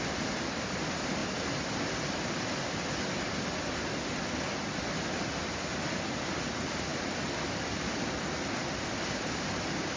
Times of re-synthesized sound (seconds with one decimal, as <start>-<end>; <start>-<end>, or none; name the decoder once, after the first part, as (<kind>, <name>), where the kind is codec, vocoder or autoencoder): none